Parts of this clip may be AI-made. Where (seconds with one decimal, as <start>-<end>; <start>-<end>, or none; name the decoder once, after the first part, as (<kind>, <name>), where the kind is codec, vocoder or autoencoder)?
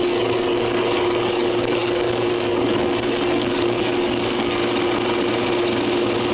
0.0-4.6 (codec, DAC)